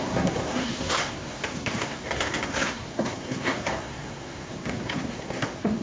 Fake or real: fake